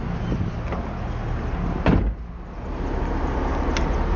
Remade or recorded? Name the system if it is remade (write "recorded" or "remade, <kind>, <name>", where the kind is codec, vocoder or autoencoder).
recorded